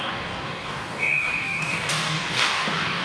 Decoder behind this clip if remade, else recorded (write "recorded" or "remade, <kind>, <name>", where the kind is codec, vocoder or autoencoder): remade, codec, DAC